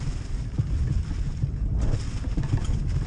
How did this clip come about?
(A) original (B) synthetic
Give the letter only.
A